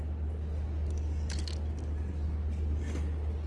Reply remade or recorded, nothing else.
recorded